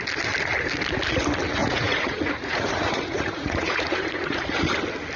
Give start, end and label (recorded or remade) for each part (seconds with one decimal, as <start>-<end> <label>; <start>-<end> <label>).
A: 0.0-1.6 recorded; 1.6-4.7 remade; 4.7-5.2 recorded